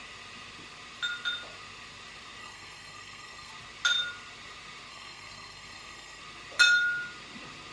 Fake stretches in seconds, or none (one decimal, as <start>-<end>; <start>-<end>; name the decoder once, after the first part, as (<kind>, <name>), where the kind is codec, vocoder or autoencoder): 2.4-3.5 (codec, SNAC); 4.9-6.2